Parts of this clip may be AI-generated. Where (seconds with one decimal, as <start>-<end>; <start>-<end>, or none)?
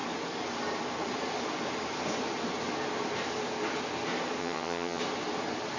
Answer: 4.4-5.0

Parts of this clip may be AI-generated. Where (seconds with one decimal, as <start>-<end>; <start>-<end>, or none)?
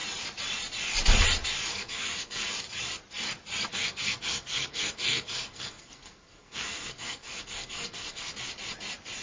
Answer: 1.7-2.5; 3.7-8.3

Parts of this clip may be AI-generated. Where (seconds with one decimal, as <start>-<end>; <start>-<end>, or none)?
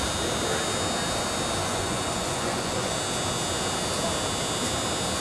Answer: 1.6-2.9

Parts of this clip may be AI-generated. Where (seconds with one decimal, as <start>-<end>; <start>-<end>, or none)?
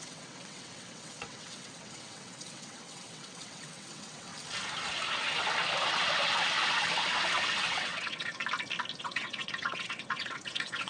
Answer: 0.0-4.3; 7.7-8.4; 9.0-10.9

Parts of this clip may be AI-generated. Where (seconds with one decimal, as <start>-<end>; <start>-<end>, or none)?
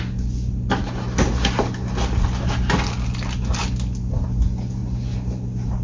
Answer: none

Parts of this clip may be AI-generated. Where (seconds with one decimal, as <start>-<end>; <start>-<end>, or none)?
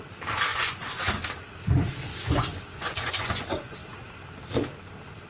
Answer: 0.5-1.1; 2.1-3.8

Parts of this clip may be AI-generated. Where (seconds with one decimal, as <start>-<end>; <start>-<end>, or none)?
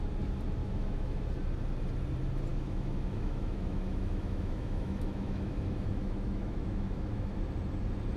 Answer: 0.6-1.3; 2.5-7.4